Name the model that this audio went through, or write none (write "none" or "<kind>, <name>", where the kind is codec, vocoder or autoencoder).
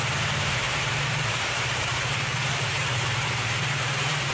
vocoder, BigVGAN v2